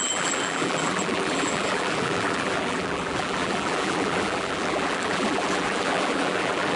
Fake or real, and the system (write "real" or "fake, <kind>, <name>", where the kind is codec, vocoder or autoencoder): fake, vocoder, BigVGAN v2